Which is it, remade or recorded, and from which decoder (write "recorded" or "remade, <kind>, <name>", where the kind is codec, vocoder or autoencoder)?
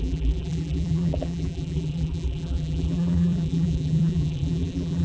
remade, vocoder, BigVGAN v2